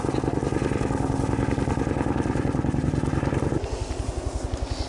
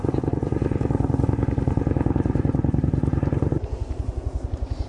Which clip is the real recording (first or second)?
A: first